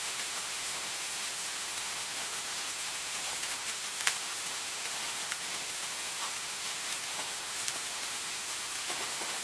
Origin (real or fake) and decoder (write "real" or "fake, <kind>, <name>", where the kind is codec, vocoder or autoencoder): fake, autoencoder, DAC-VAE